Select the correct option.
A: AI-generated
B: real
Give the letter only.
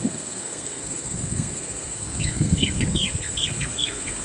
A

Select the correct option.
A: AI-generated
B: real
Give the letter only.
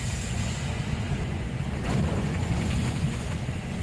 A